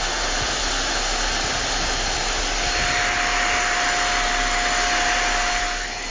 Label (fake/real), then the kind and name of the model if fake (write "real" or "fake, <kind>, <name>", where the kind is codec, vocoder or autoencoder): real